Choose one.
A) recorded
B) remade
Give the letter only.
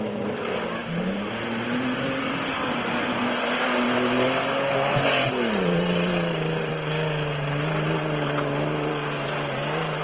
A